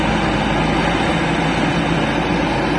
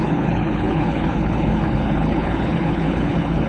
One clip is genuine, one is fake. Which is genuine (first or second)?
first